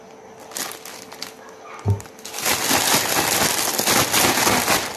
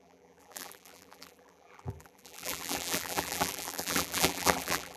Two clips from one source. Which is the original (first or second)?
first